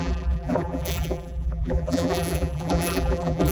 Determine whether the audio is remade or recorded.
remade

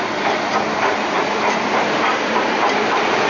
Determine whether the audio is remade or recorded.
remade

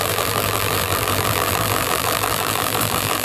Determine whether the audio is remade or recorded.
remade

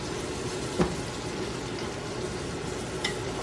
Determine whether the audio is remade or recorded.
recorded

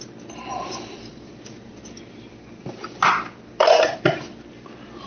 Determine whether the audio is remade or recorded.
recorded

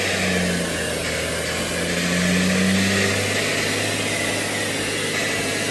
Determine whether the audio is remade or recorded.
recorded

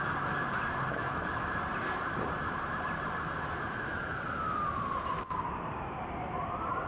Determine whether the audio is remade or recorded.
remade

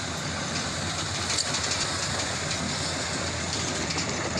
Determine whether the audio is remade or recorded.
remade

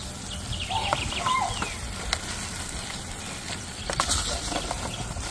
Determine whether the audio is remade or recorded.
recorded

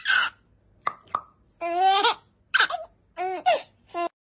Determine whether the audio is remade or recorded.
recorded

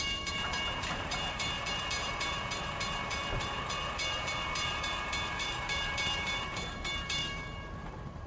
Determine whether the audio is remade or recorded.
remade